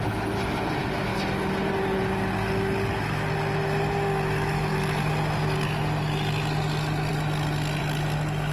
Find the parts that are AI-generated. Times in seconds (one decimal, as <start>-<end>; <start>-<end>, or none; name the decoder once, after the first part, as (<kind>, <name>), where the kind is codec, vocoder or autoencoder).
none